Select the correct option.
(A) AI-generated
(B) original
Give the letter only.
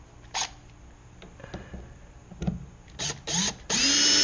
B